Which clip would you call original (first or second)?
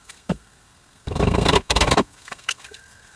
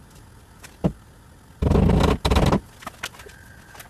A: second